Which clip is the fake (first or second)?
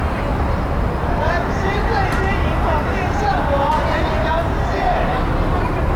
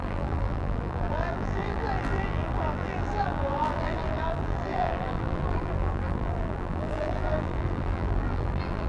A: second